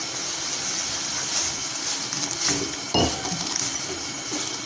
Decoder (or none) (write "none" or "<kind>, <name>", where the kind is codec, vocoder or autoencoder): none